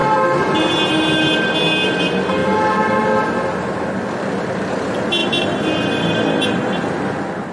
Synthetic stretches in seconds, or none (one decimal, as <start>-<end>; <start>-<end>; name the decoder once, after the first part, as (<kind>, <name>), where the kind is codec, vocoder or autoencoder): none